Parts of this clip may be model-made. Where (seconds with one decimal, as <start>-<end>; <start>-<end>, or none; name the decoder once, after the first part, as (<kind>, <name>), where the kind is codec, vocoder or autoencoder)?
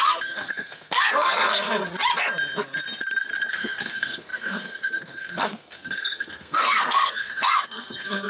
0.0-1.8 (codec, SNAC); 3.5-8.3